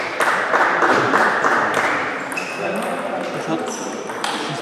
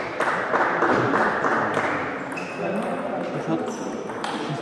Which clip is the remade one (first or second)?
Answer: first